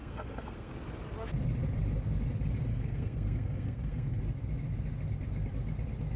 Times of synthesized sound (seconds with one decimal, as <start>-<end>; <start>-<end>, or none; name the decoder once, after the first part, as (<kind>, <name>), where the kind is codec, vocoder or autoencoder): 0.0-0.7 (codec, SNAC); 2.7-4.2